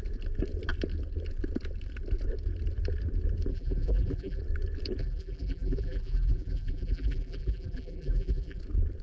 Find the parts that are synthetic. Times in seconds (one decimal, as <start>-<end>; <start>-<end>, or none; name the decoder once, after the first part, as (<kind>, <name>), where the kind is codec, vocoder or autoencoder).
3.5-4.4 (vocoder, BigVGAN v2); 5.0-8.6